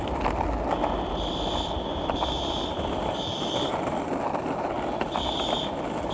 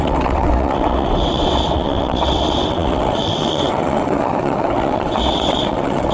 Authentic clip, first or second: first